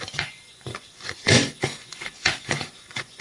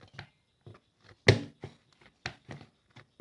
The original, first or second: second